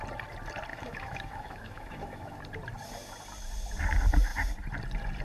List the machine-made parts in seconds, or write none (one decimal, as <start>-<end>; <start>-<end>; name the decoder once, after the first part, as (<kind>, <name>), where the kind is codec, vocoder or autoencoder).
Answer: 0.7-2.4 (autoencoder, DAC-VAE)